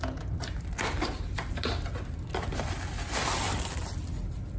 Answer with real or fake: real